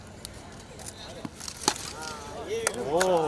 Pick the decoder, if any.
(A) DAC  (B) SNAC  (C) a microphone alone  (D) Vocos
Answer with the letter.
C